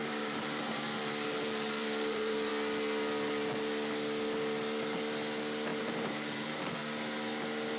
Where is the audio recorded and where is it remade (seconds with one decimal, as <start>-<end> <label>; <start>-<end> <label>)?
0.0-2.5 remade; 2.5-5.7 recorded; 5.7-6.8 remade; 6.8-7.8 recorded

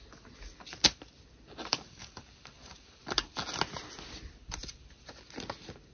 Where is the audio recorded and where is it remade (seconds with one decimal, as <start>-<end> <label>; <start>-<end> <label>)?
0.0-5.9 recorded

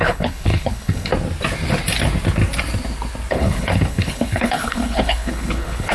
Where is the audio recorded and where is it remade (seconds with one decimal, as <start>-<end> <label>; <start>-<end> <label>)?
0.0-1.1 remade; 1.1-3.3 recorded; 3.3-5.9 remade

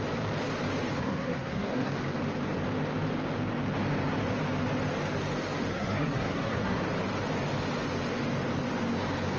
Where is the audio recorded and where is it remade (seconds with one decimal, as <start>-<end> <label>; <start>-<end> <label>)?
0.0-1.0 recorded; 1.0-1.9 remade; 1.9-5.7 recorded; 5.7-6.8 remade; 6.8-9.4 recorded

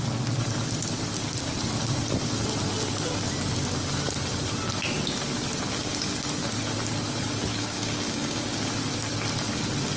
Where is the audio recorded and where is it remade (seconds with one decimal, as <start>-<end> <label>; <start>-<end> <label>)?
0.0-7.5 recorded; 7.5-8.6 remade; 8.6-10.0 recorded

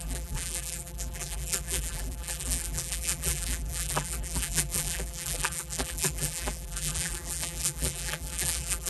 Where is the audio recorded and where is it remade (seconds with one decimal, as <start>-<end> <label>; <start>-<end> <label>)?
0.0-8.9 remade

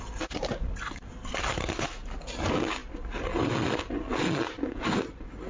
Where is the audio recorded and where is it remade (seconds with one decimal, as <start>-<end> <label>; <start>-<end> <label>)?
0.0-5.5 recorded